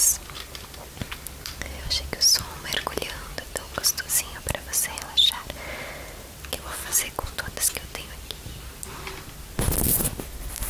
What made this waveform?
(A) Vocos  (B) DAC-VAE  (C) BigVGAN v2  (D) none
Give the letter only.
D